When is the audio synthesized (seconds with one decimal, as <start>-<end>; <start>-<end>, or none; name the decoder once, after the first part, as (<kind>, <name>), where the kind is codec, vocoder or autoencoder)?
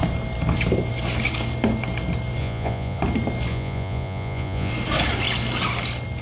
2.4-3.0 (vocoder, Vocos); 3.5-4.7